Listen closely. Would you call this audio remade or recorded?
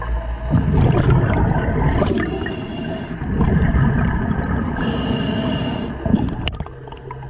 recorded